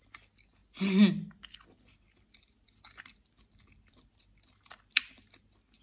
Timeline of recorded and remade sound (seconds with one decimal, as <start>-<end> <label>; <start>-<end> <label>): 0.0-5.8 recorded